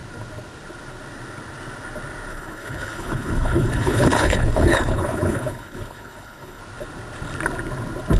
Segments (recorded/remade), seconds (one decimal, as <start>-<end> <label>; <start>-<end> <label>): 0.0-2.3 recorded; 2.3-6.6 remade; 6.6-8.2 recorded